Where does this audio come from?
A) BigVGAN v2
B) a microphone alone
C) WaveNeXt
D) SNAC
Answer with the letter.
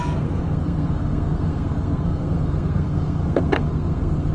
D